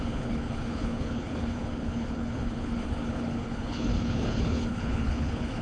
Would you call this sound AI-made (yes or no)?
yes